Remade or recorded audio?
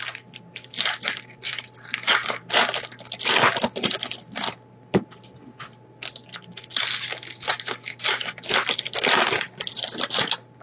recorded